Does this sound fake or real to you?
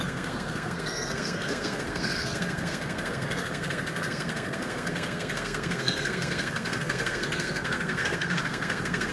fake